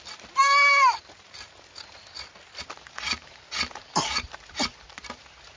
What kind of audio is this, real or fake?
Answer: real